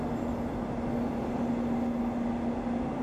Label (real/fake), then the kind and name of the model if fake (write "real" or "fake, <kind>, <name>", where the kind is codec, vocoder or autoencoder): real